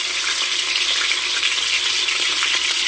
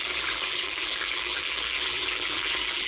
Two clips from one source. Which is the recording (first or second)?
first